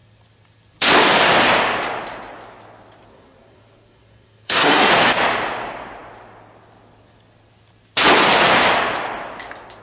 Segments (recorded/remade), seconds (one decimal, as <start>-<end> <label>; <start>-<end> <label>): 0.0-3.1 recorded; 3.1-4.9 remade; 4.9-9.8 recorded